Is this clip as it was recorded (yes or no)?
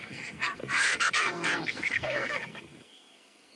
no